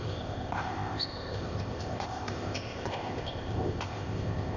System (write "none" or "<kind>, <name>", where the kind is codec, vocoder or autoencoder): codec, ZipCodec